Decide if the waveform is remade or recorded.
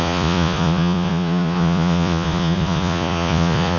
remade